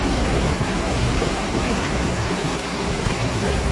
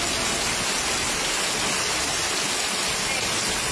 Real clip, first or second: second